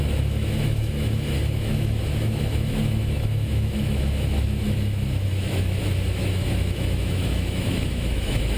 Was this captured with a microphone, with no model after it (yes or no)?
no